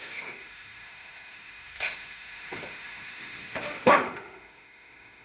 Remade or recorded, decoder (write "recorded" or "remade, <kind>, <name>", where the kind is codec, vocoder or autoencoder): remade, autoencoder, DAC-VAE